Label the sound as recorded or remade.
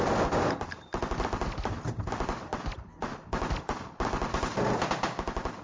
recorded